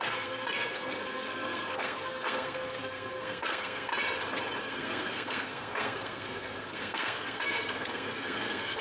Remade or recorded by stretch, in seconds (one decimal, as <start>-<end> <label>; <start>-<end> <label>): 0.0-3.9 remade; 3.9-4.6 recorded; 4.6-8.8 remade